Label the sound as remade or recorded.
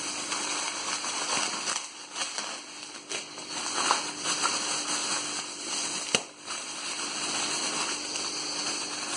recorded